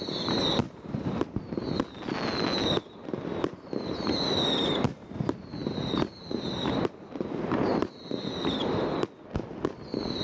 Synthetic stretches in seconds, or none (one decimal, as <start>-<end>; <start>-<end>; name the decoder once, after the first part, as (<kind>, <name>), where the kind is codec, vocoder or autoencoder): none